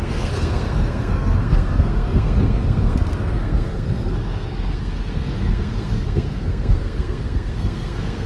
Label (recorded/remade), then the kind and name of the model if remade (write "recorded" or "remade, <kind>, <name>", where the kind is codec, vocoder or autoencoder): remade, codec, SNAC